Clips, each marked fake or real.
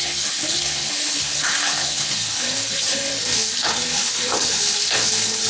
fake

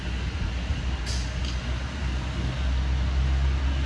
real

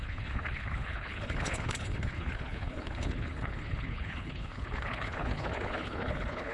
fake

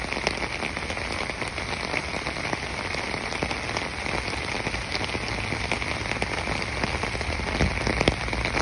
real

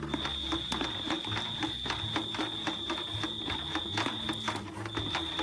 real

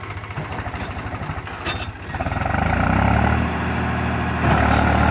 real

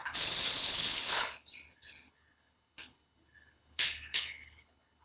fake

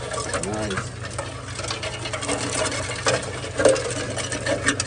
real